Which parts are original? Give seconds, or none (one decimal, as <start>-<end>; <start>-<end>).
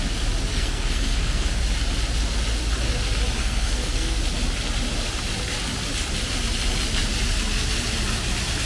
0.0-0.5; 1.6-3.4; 4.2-8.7